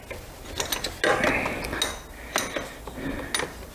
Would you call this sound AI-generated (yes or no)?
no